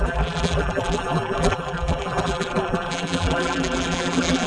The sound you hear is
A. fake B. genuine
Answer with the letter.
A